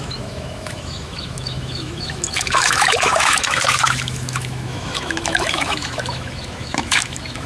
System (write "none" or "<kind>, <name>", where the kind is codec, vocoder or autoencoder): autoencoder, DAC-VAE